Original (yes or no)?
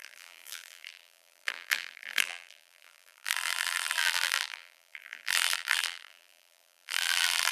no